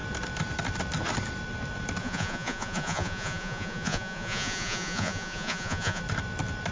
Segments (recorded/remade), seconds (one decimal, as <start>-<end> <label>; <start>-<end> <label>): 0.0-2.0 recorded; 2.0-6.0 remade; 6.0-6.7 recorded